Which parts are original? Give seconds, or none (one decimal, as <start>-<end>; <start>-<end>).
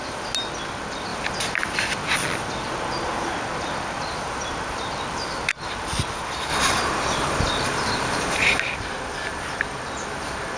0.0-6.5; 8.6-10.6